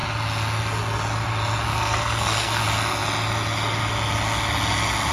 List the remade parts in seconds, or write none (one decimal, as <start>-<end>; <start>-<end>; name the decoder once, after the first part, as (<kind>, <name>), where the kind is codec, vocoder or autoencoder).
1.7-2.6 (codec, SNAC)